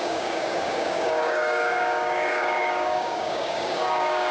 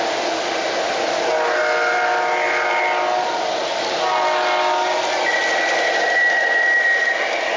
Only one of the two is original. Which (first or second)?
second